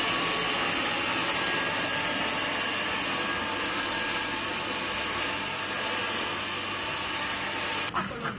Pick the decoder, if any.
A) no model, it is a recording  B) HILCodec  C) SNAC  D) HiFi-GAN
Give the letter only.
A